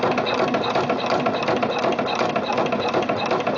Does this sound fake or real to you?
real